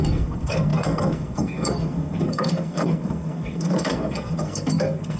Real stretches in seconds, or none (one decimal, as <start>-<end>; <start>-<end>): none